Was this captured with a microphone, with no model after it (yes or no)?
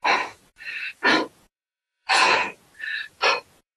no